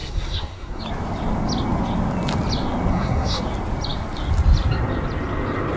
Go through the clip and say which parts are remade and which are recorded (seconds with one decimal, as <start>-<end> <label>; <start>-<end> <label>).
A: 0.0-0.8 remade; 0.8-2.9 recorded; 2.9-3.4 remade; 3.4-5.8 recorded

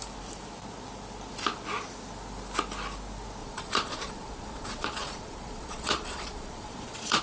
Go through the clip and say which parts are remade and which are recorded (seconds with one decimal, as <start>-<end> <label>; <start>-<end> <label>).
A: 0.0-3.4 recorded; 3.4-7.2 remade

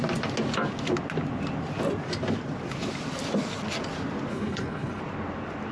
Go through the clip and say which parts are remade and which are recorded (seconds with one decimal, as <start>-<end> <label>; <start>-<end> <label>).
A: 0.0-4.3 recorded; 4.3-5.0 remade; 5.0-5.7 recorded